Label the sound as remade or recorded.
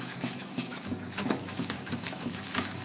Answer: remade